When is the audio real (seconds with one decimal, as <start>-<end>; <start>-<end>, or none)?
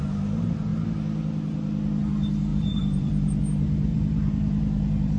0.0-2.5; 3.4-3.9